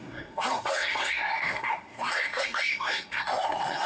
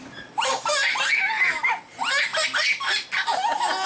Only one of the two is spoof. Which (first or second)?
first